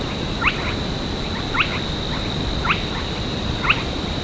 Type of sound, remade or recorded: recorded